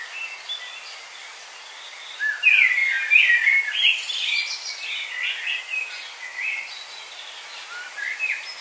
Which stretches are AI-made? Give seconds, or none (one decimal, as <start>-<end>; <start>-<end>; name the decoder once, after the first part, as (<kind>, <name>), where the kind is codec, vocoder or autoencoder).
none